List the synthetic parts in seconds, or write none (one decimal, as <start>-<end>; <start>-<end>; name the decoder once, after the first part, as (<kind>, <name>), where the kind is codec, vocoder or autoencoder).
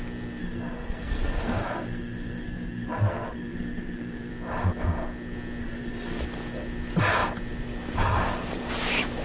0.4-4.3 (codec, SNAC); 5.6-6.2